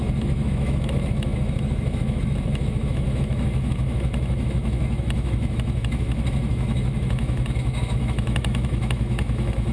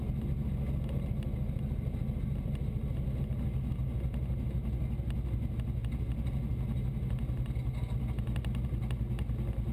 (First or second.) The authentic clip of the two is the second